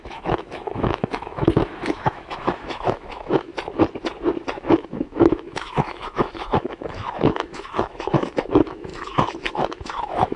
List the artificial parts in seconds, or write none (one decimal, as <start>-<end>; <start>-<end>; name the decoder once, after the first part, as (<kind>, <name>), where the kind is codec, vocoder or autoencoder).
0.0-3.5 (autoencoder, DAC-VAE); 4.5-10.4